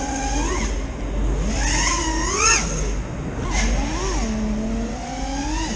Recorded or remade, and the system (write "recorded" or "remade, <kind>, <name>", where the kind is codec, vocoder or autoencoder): recorded